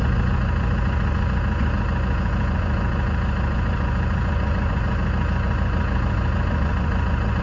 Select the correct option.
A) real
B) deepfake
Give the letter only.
B